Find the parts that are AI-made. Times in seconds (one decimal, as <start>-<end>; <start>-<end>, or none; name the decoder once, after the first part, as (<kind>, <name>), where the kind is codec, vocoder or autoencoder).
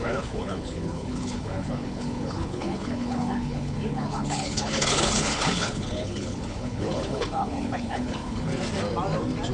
0.0-8.5 (codec, HILCodec)